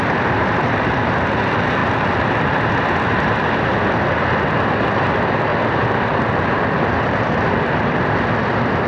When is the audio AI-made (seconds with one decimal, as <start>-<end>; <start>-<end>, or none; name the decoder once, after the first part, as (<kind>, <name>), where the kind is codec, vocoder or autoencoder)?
1.8-2.8 (vocoder, BigVGAN v2); 5.5-7.5